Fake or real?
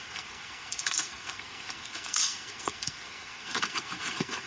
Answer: fake